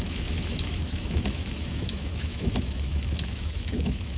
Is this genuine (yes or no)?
no